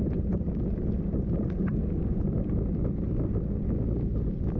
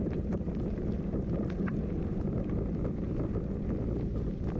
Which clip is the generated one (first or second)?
second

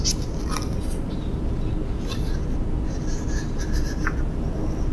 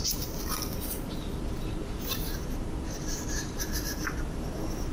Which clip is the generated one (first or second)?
second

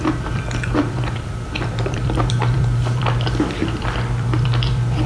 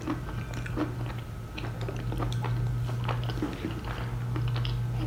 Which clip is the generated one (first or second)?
first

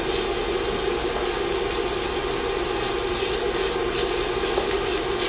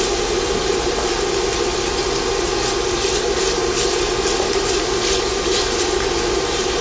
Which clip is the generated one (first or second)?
second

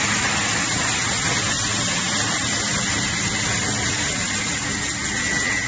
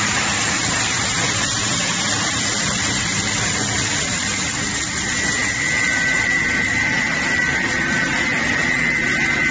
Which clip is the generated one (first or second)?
second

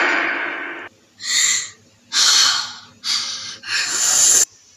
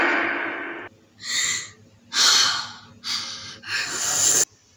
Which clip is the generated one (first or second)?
first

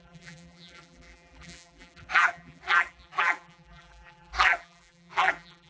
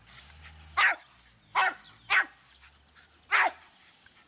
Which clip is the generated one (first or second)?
first